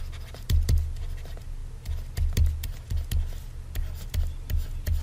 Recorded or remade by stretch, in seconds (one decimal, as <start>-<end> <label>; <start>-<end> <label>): 0.0-5.0 recorded